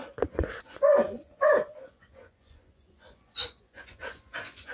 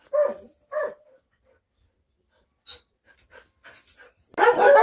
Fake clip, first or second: first